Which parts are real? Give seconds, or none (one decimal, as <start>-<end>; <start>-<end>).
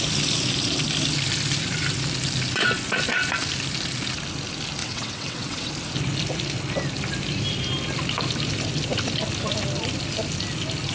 0.0-4.8; 5.7-10.9